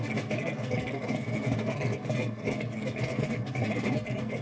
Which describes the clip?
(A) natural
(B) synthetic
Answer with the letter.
B